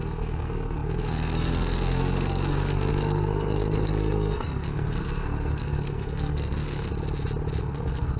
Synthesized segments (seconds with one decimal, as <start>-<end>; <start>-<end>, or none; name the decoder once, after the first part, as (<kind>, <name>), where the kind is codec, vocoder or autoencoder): 0.0-6.9 (codec, SNAC); 7.6-8.2